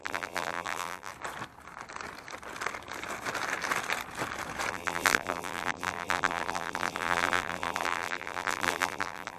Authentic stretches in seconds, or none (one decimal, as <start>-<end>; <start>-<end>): 1.1-4.7